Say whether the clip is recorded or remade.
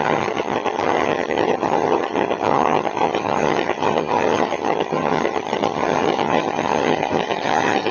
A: remade